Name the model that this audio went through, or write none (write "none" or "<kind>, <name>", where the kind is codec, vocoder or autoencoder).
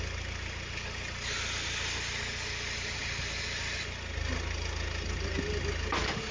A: none